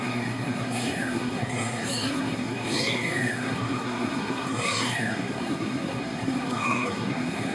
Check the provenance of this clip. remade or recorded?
remade